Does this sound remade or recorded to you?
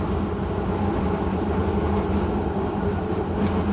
recorded